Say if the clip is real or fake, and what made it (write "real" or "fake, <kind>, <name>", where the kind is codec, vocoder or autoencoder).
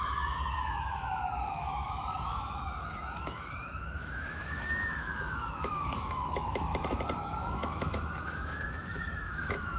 fake, autoencoder, DAC-VAE